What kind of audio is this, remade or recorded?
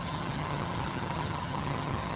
remade